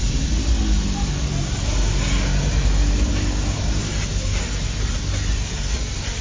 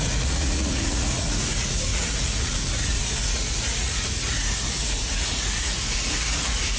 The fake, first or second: second